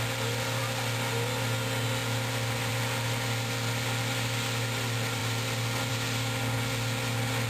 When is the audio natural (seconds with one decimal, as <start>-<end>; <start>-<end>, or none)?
0.6-2.7; 5.2-5.9